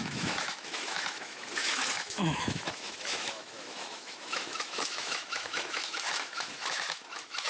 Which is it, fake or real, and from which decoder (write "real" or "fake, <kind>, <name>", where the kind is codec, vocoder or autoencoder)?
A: fake, autoencoder, DAC-VAE